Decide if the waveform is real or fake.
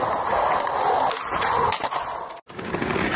real